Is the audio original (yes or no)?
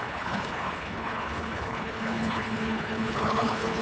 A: no